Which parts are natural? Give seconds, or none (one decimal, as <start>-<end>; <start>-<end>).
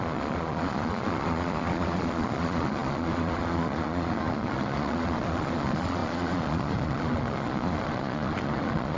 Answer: none